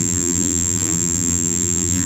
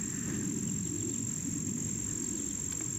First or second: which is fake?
first